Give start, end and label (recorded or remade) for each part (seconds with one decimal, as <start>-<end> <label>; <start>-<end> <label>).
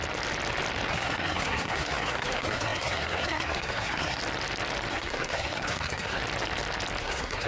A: 0.0-0.9 recorded; 0.9-4.2 remade; 4.2-4.9 recorded; 4.9-6.2 remade; 6.2-7.0 recorded; 7.0-7.5 remade